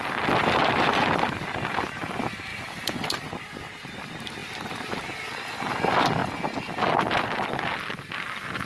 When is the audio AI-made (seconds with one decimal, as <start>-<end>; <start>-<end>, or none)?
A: 2.5-3.5